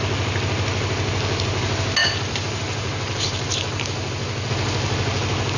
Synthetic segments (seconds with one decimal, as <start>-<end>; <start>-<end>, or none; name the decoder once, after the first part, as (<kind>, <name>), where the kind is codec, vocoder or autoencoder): 2.0-4.5 (vocoder, BigVGAN v2)